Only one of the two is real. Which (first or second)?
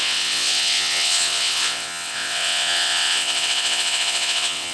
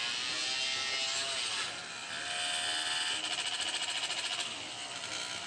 second